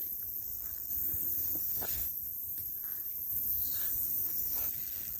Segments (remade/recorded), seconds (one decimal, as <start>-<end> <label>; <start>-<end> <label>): 0.0-0.9 recorded; 0.9-2.1 remade; 2.1-3.3 recorded; 3.3-4.7 remade; 4.7-5.2 recorded